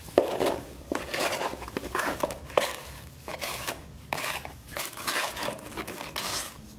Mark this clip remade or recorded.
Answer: remade